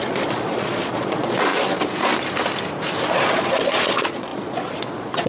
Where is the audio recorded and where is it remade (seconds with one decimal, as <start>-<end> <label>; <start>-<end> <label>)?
0.0-1.5 remade; 1.5-3.1 recorded; 3.1-5.3 remade